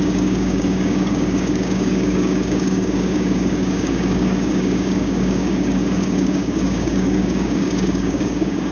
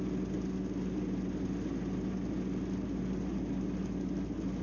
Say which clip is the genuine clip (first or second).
second